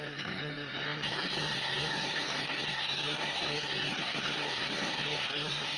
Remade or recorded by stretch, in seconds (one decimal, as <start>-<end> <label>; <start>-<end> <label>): 0.0-5.8 remade